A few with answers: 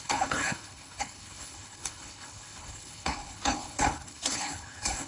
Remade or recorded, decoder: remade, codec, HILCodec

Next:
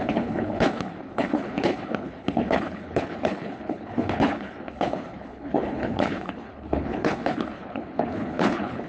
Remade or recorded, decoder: remade, codec, HILCodec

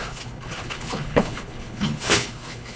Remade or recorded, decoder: remade, codec, HILCodec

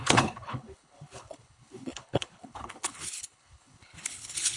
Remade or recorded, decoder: remade, codec, HILCodec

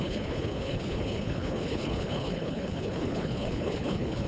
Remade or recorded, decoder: remade, codec, HILCodec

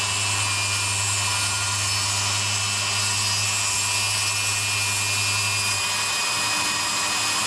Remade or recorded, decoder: recorded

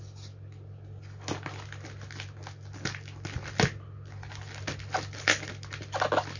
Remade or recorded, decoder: recorded